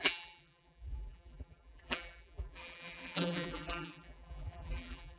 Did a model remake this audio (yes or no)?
yes